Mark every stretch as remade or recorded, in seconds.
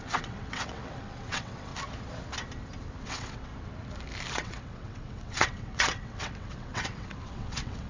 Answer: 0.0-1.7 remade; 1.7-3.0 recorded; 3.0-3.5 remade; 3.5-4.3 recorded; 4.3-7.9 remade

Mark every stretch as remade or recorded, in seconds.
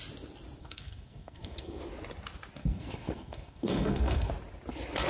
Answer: 0.0-0.6 recorded; 0.6-1.8 remade; 1.8-2.6 recorded; 2.6-4.3 remade; 4.3-5.1 recorded